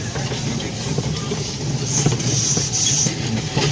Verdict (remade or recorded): recorded